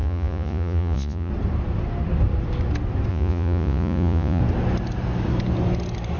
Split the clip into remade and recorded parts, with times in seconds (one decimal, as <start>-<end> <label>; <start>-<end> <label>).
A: 0.0-1.3 remade; 1.3-3.1 recorded; 3.1-4.4 remade; 4.4-6.2 recorded